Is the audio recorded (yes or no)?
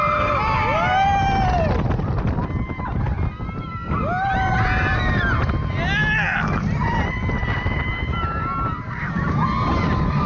yes